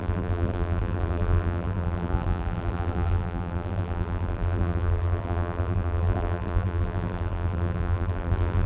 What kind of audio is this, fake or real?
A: fake